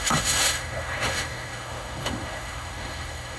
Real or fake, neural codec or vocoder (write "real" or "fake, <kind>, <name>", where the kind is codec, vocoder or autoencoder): fake, autoencoder, DAC-VAE